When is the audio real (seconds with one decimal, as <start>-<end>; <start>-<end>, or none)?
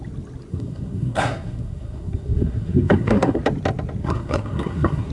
0.0-0.5; 3.4-4.0